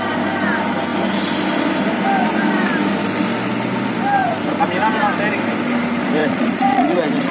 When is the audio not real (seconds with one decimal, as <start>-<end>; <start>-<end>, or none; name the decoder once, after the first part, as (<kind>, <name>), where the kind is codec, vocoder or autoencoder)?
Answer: 6.2-7.3 (vocoder, Vocos)